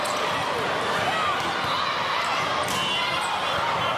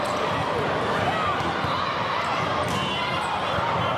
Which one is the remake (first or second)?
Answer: second